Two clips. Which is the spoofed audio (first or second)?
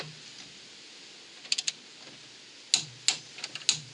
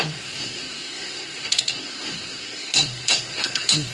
second